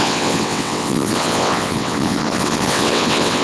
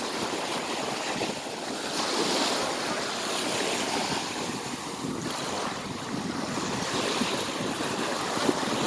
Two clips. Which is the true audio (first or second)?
second